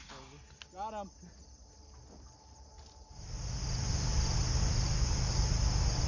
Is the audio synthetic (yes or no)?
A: no